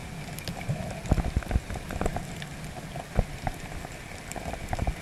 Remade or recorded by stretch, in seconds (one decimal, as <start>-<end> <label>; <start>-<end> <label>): 0.0-5.0 recorded